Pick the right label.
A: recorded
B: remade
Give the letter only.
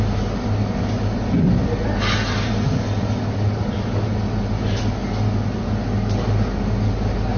A